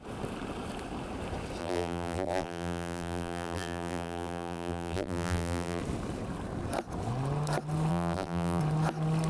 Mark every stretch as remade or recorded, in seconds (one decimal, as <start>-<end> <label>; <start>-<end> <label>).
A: 0.0-1.6 recorded; 1.6-5.8 remade; 5.8-7.9 recorded; 7.9-8.6 remade; 8.6-9.3 recorded